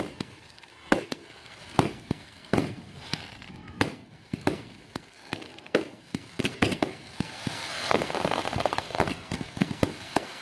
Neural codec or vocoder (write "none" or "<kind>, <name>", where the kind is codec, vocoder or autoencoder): codec, SNAC